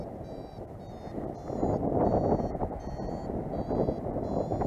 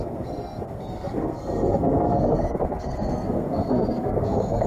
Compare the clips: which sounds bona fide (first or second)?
first